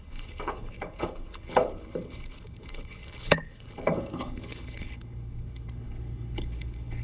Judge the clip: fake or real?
fake